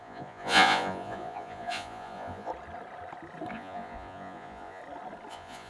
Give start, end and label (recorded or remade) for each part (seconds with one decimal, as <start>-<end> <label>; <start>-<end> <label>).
0.0-2.5 remade; 2.5-3.5 recorded; 3.5-4.8 remade; 4.8-5.3 recorded; 5.3-5.7 remade